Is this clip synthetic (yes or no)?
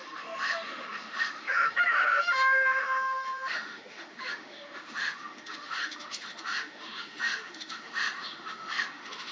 yes